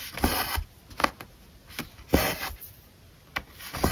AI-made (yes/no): no